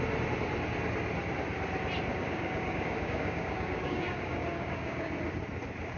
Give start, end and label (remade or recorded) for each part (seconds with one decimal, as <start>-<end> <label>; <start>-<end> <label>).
0.0-2.1 recorded; 2.1-5.1 remade; 5.1-6.0 recorded